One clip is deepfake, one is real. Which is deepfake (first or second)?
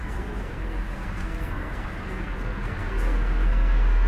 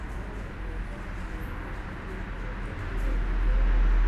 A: first